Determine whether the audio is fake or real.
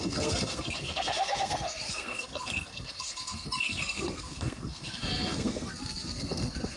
fake